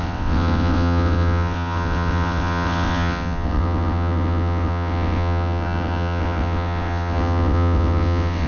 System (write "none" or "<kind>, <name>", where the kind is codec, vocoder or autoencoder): vocoder, WaveNeXt